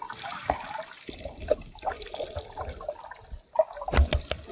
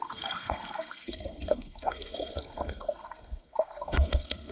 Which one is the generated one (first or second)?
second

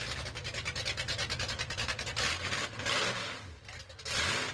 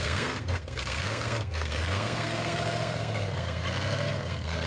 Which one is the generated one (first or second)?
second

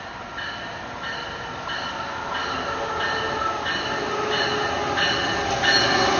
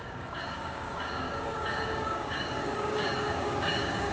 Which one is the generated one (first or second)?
second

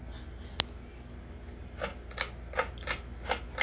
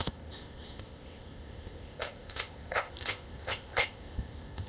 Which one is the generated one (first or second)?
second